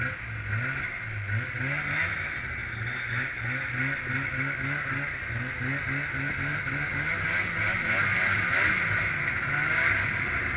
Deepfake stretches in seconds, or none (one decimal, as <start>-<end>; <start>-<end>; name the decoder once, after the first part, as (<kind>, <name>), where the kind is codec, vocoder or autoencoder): none